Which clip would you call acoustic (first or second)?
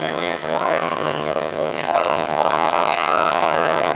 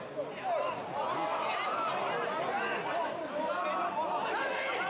second